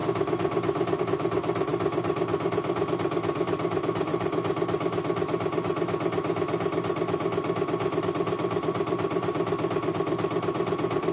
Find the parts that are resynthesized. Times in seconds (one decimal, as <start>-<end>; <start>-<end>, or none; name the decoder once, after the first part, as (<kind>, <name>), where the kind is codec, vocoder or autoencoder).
1.0-4.1 (vocoder, BigVGAN v2); 8.0-11.1